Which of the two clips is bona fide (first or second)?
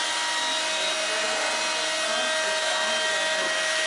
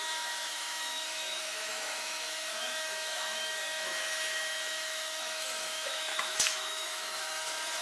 first